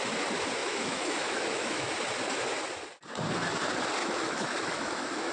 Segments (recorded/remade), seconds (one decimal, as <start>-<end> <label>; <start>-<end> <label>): 0.0-0.6 recorded; 0.6-1.9 remade; 1.9-4.0 recorded; 4.0-5.3 remade